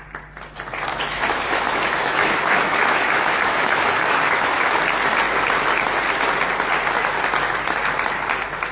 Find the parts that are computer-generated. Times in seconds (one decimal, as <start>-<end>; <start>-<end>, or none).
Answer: 0.9-4.8